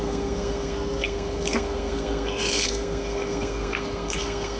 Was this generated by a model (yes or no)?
yes